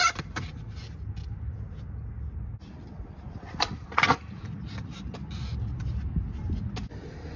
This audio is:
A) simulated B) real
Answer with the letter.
B